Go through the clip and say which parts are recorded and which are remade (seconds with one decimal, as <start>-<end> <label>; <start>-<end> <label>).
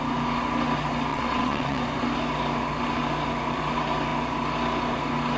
0.0-1.1 recorded; 1.1-1.8 remade; 1.8-5.4 recorded